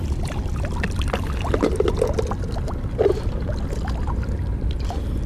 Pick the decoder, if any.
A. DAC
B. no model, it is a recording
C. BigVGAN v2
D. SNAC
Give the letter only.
B